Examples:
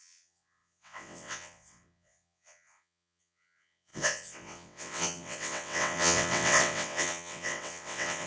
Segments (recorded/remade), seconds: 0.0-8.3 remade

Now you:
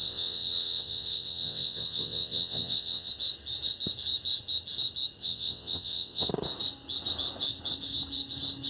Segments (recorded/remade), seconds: 0.0-3.1 remade; 3.1-5.2 recorded; 5.2-6.3 remade; 6.3-8.7 recorded

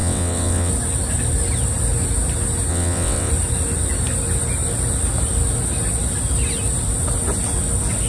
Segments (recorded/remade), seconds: 0.0-0.7 remade; 0.7-2.7 recorded; 2.7-3.3 remade; 3.3-8.1 recorded

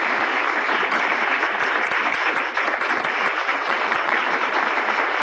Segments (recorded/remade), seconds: 0.0-3.5 recorded; 3.5-4.2 remade; 4.2-5.2 recorded

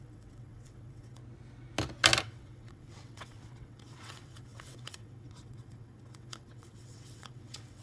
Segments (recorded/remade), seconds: 0.0-1.2 remade; 1.2-2.2 recorded; 2.2-7.8 remade

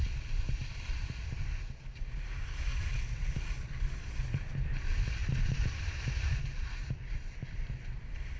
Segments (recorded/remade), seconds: 0.0-2.7 recorded; 2.7-3.3 remade; 3.3-8.4 recorded

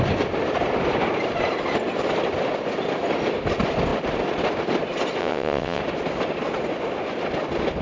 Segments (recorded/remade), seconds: 0.0-5.2 recorded; 5.2-5.8 remade; 5.8-7.8 recorded